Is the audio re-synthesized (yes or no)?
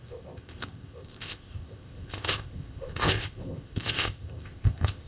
yes